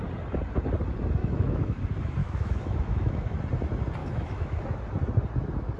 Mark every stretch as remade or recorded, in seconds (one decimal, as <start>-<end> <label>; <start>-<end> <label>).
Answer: 0.0-1.2 recorded; 1.2-1.8 remade; 1.8-2.2 recorded; 2.2-3.4 remade; 3.4-4.0 recorded; 4.0-4.8 remade; 4.8-5.8 recorded